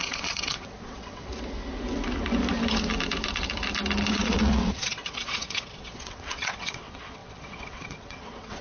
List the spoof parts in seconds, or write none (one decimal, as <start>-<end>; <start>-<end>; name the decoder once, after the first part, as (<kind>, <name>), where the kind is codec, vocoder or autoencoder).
0.0-1.3 (vocoder, WaveNeXt); 4.1-8.6